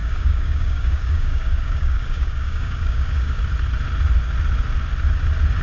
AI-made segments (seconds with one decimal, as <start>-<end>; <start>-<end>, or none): 0.0-3.4

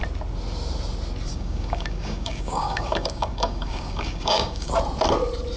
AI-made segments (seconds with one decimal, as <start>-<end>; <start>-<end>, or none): 1.3-4.7

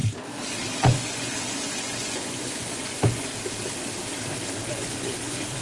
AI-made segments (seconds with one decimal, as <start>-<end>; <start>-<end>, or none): 0.9-3.3; 4.7-5.6

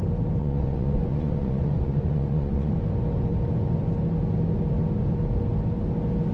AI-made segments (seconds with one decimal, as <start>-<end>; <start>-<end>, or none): 0.4-2.7